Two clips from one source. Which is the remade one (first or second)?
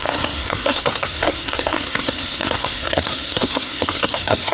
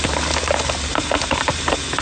first